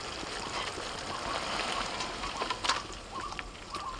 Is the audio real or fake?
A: real